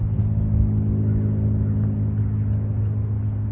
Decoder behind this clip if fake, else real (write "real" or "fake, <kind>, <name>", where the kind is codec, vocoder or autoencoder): real